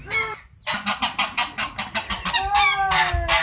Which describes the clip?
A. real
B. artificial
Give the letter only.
A